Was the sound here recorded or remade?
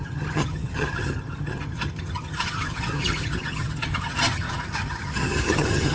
remade